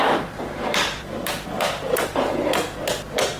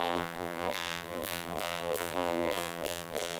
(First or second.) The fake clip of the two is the second